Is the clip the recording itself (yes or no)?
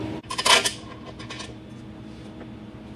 yes